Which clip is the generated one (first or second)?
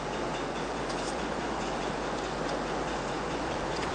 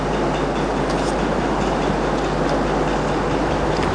first